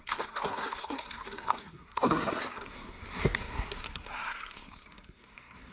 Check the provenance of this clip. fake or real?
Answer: fake